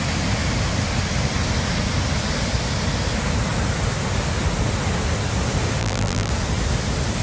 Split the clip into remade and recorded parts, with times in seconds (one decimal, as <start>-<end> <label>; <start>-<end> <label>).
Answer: 0.0-5.8 recorded; 5.8-6.3 remade; 6.3-7.2 recorded